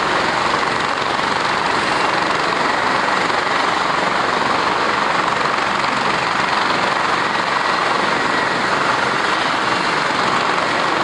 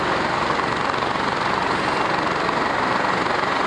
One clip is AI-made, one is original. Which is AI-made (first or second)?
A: first